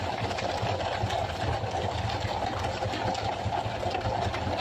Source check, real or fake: real